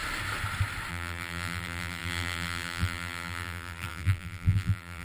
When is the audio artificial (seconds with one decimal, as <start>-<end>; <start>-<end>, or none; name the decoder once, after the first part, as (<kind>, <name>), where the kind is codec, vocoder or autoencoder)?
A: 0.9-5.0 (vocoder, BigVGAN v2)